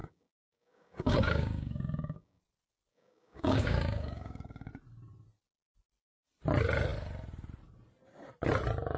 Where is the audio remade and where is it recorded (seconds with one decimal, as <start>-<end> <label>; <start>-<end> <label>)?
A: 0.0-2.4 remade; 2.4-2.9 recorded; 2.9-4.7 remade; 4.7-9.0 recorded